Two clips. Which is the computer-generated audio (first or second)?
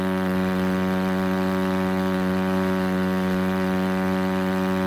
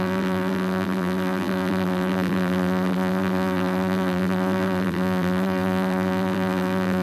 second